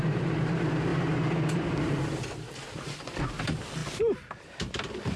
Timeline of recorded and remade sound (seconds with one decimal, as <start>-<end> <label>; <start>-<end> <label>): 0.0-5.2 remade